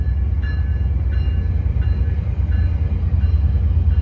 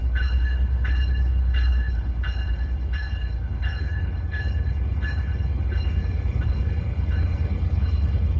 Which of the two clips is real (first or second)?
first